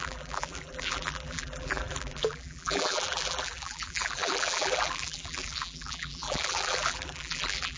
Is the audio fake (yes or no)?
yes